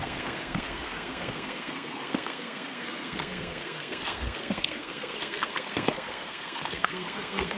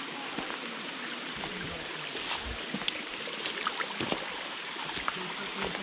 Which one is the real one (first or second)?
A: second